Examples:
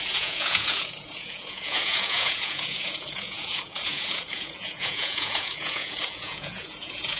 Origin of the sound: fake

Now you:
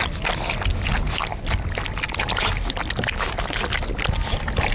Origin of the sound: real